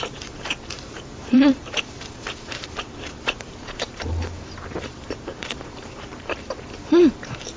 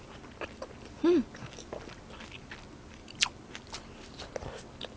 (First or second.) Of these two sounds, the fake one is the first